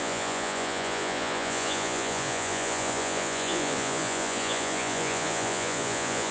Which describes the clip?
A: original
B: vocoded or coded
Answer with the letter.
B